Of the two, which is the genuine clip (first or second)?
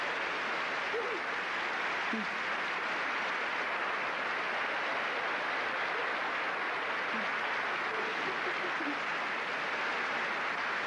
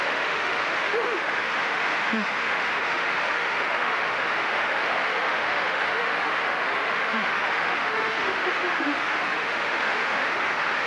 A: first